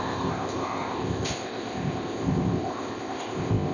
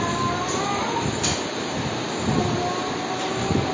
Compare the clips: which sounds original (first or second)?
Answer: second